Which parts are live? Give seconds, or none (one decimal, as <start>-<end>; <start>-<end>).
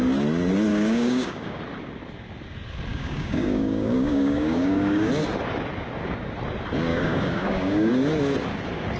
0.0-0.7; 1.6-2.9; 5.1-6.9; 7.9-9.0